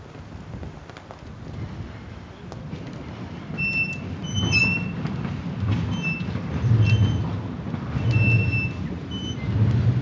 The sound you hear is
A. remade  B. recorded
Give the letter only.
B